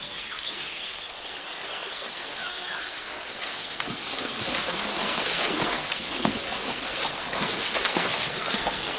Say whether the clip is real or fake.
fake